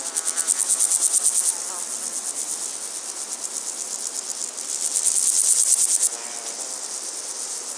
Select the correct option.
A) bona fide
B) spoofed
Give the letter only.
A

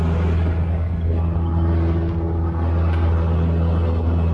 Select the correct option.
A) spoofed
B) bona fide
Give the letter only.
B